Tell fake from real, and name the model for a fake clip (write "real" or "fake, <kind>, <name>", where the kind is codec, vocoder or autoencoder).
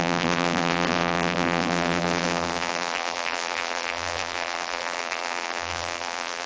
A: fake, vocoder, BigVGAN v2